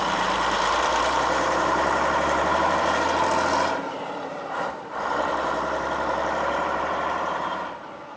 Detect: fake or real fake